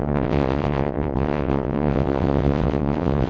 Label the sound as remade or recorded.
remade